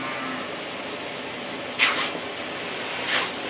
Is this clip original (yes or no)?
yes